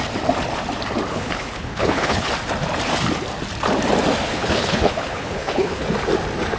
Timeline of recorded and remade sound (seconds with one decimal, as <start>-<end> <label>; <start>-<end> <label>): 0.0-1.1 recorded; 1.1-2.3 remade; 2.3-4.3 recorded; 4.3-5.8 remade; 5.8-6.6 recorded